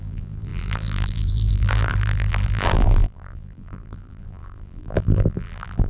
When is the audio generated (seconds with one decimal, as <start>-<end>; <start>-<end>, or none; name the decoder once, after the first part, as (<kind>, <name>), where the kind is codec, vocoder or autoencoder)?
0.0-5.9 (vocoder, BigVGAN v2)